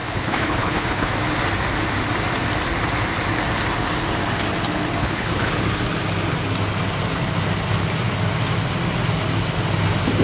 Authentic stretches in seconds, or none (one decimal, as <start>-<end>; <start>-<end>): 1.1-5.0; 5.5-10.2